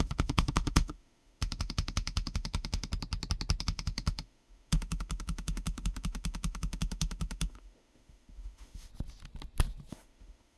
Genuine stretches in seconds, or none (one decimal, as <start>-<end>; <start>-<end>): 2.9-3.6; 8.9-9.9